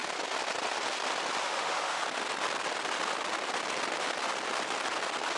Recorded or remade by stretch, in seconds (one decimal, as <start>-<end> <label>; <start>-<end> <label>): 0.0-1.4 recorded; 1.4-2.0 remade; 2.0-5.4 recorded